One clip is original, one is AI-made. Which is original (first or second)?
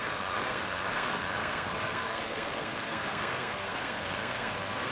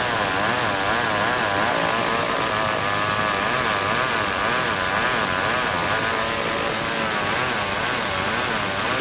second